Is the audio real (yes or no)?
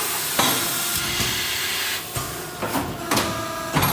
yes